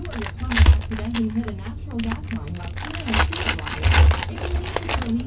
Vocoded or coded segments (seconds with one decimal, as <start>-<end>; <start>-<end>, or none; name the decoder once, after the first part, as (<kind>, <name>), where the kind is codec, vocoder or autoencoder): none